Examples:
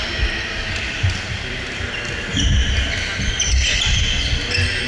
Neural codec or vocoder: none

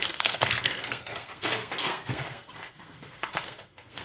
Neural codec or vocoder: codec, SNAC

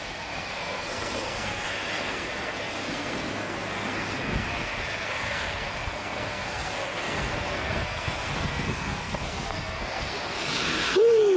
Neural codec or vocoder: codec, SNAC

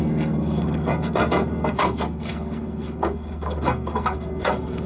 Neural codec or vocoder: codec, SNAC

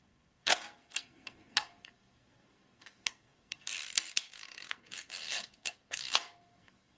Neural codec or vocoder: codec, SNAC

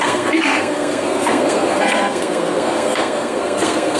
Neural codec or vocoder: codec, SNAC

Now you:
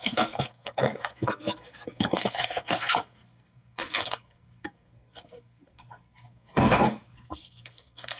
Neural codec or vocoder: codec, SNAC